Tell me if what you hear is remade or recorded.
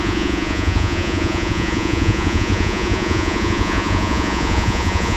remade